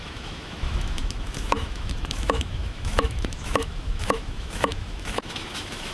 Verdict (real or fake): fake